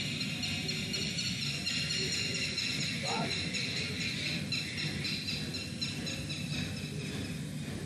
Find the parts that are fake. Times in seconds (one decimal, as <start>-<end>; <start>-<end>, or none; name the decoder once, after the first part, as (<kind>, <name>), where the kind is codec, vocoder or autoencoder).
1.0-4.4 (vocoder, Vocos)